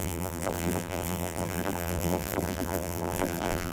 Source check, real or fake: fake